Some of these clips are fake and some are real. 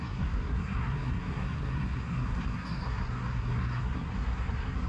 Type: fake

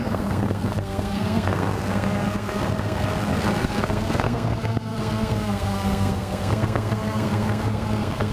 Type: fake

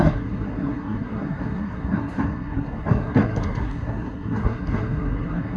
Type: fake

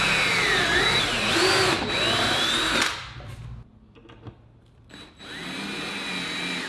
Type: real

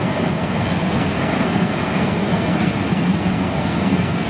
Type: fake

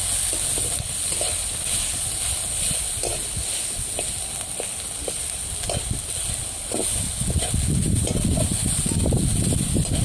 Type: real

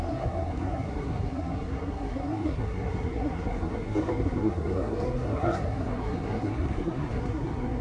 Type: fake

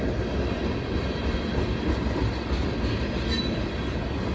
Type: real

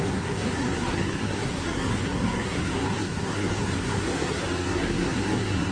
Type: fake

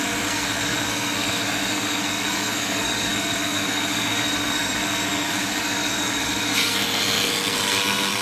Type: fake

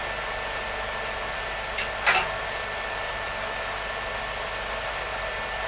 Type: real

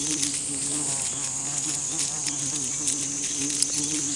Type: real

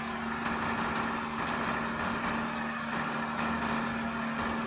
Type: real